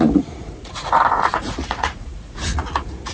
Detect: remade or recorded remade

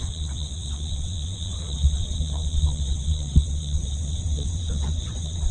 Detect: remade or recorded remade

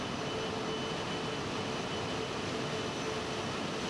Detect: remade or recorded recorded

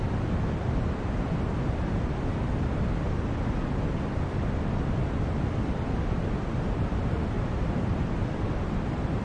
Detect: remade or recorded remade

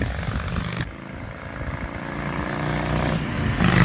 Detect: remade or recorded recorded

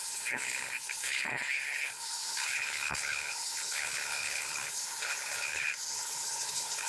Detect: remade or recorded remade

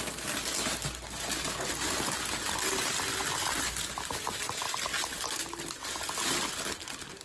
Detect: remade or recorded recorded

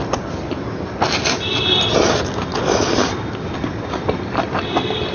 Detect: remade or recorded recorded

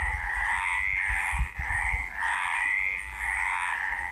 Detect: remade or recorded recorded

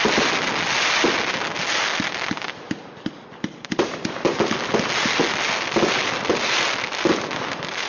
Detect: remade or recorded recorded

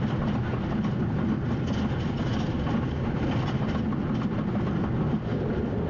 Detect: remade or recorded recorded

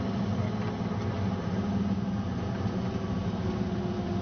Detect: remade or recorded recorded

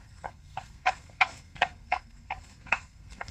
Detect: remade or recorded remade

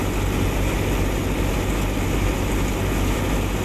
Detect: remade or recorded recorded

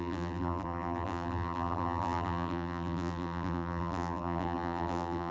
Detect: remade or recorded remade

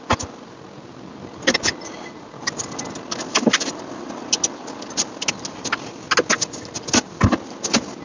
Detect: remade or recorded recorded